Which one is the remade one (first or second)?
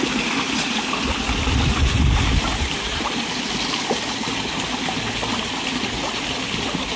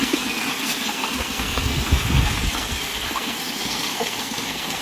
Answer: second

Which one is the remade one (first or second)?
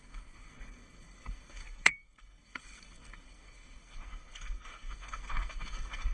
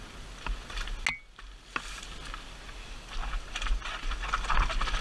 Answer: first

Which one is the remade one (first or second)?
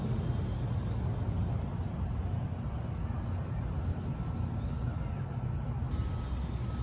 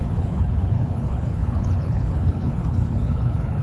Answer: second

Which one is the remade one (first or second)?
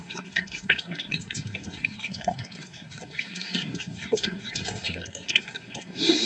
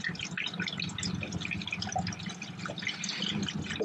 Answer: first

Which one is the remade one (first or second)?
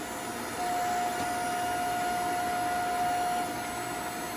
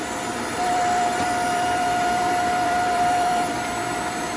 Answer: second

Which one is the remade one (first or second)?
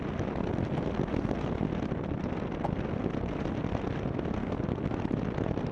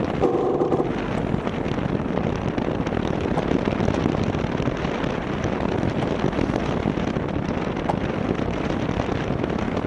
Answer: second